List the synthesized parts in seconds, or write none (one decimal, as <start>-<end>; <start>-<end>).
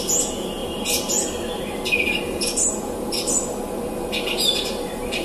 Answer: none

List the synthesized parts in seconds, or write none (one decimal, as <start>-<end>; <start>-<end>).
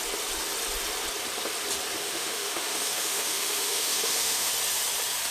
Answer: 2.0-4.5